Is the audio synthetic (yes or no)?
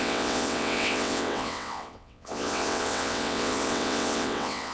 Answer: yes